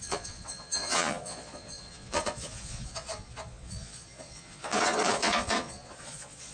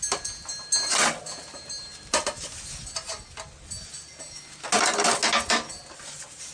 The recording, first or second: second